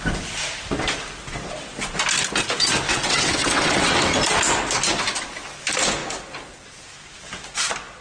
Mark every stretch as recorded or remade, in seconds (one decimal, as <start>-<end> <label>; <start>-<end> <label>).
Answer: 0.0-2.9 recorded; 2.9-3.9 remade; 3.9-8.0 recorded